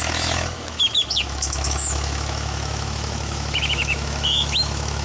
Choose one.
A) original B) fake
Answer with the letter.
B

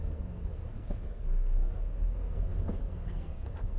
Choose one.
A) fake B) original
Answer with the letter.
A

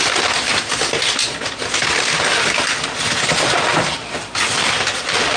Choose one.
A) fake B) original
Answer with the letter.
B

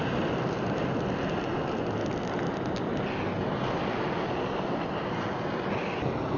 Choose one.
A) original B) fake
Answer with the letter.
A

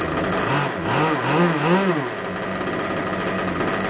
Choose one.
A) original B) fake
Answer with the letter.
A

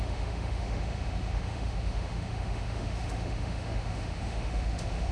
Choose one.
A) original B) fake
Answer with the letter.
B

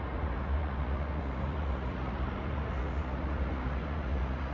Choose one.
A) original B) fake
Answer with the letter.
B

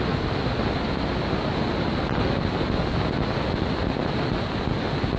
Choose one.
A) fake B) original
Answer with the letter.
B